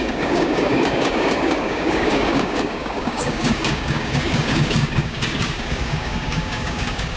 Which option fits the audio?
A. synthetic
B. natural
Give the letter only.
A